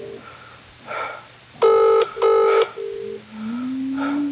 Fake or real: real